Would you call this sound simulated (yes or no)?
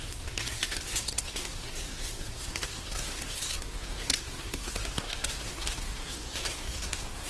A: yes